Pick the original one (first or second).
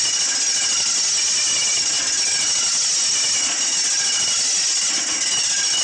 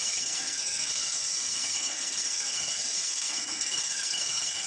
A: first